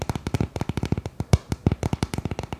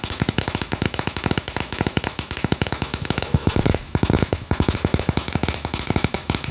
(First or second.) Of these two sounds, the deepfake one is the second